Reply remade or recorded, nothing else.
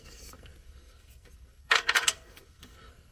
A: remade